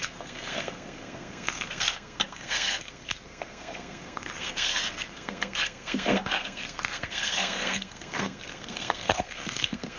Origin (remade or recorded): remade